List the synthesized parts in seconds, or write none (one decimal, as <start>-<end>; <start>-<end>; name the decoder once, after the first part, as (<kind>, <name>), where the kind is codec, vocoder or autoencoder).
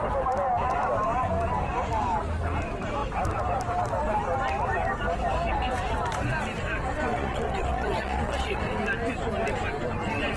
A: 7.1-8.6 (vocoder, Vocos)